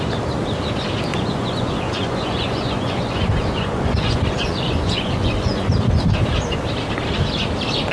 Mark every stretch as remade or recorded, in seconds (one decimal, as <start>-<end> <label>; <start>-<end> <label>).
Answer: 0.0-1.1 recorded; 1.1-5.7 remade; 5.7-7.9 recorded